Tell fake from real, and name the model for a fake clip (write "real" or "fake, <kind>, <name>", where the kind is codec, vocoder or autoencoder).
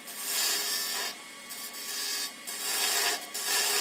real